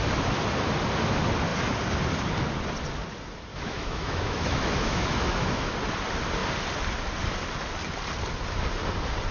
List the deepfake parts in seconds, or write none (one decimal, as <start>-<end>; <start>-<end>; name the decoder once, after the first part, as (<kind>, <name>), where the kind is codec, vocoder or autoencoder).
3.5-5.7 (autoencoder, DAC-VAE)

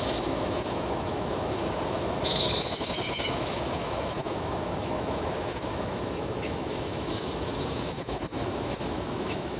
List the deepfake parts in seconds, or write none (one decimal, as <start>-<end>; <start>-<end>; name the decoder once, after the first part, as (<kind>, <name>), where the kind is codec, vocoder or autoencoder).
0.0-9.6 (autoencoder, DAC-VAE)

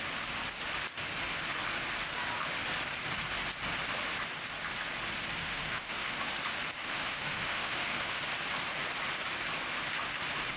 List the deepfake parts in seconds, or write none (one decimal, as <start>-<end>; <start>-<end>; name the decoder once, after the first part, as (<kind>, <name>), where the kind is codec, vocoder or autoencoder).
5.4-6.3 (autoencoder, DAC-VAE); 6.8-8.2

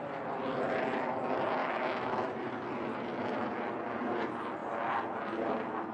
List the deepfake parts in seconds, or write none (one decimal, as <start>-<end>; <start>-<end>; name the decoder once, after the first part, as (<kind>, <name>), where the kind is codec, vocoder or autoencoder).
1.6-2.3 (autoencoder, DAC-VAE)

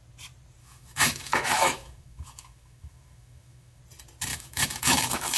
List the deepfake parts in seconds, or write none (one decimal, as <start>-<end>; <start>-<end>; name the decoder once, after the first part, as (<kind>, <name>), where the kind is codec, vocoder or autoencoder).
0.6-3.8 (autoencoder, DAC-VAE); 4.3-5.4